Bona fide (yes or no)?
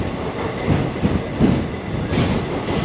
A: yes